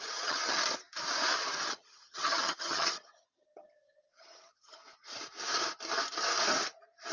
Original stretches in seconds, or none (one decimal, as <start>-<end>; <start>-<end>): 0.6-1.7; 4.8-7.1